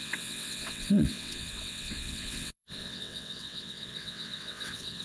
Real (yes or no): no